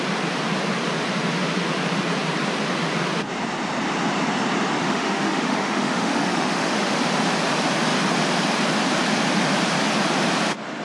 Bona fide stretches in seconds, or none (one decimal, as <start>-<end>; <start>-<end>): 0.0-4.8; 7.0-10.8